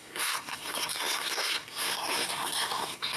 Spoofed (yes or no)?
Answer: yes